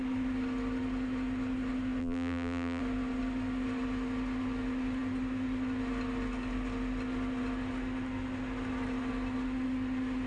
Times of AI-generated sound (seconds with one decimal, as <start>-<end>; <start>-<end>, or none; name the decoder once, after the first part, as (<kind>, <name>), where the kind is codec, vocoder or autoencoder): 2.0-2.8 (vocoder, BigVGAN v2)